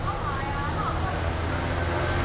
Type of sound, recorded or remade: recorded